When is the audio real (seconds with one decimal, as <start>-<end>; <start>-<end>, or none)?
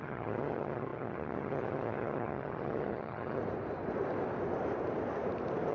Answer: 3.4-5.7